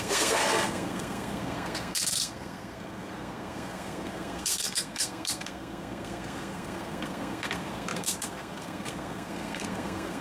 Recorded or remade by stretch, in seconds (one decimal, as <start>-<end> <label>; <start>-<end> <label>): 0.0-10.2 remade